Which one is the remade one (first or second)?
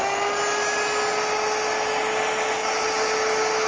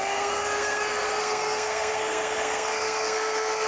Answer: second